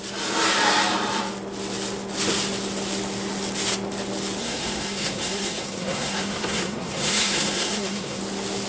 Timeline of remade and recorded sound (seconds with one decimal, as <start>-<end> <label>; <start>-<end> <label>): 0.0-4.4 recorded; 4.4-8.2 remade; 8.2-8.7 recorded